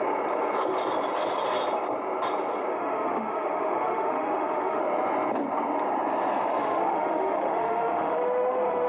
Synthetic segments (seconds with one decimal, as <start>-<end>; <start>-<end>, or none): 2.7-4.8; 6.6-8.9